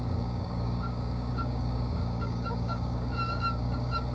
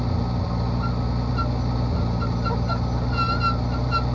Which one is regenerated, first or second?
first